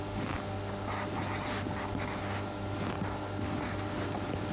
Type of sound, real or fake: real